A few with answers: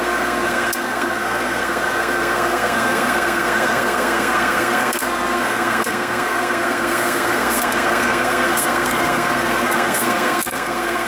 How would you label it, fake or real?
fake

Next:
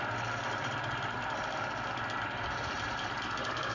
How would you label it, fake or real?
real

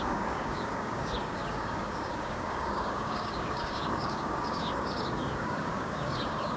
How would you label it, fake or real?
fake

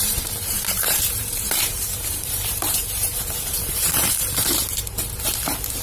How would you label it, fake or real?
fake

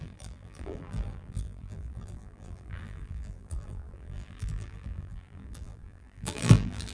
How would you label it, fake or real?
fake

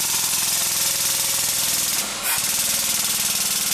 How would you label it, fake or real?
real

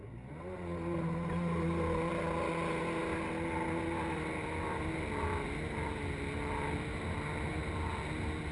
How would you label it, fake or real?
real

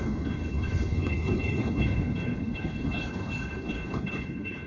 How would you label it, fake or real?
fake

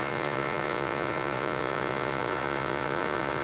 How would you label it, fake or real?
fake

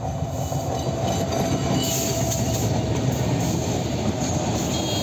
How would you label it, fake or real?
real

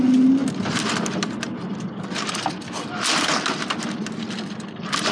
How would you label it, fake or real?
real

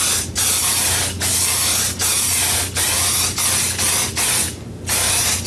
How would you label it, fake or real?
real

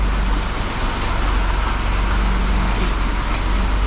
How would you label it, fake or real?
real